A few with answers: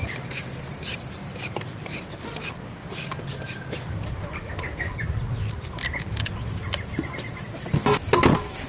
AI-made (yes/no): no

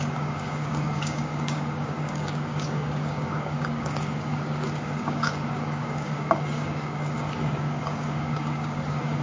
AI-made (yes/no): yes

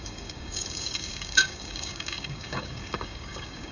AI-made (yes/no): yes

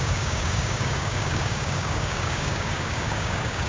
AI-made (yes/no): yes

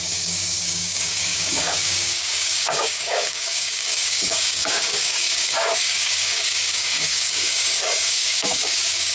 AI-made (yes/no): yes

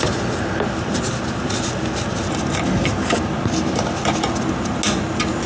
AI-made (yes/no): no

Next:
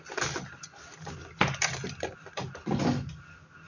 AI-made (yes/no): no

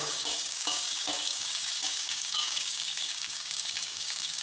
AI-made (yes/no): yes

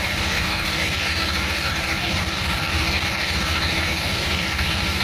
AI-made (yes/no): yes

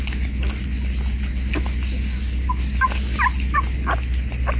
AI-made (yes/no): no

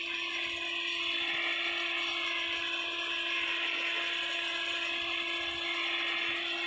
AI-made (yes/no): no